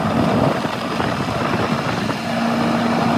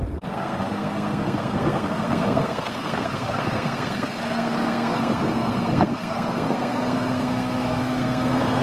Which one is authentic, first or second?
first